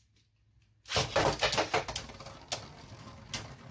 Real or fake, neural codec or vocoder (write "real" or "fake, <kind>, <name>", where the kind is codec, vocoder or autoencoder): real